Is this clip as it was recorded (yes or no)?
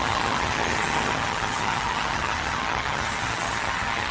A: no